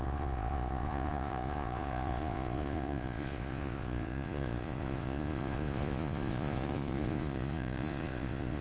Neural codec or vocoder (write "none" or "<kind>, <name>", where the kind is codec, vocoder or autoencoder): vocoder, Vocos